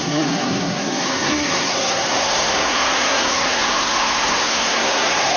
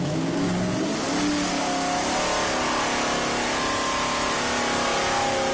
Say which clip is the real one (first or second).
second